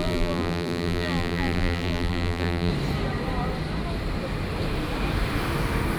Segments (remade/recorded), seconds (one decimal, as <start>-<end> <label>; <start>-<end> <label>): 0.0-2.7 remade; 2.7-6.0 recorded

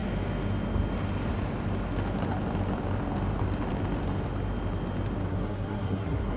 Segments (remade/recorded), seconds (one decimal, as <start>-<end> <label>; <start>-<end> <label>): 0.0-5.3 recorded; 5.3-6.4 remade